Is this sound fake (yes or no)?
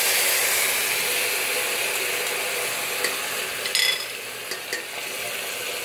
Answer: no